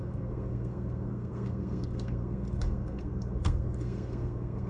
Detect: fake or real fake